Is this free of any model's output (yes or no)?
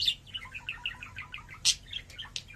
yes